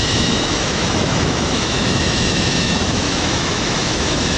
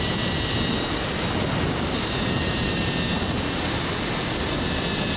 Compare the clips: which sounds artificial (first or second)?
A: first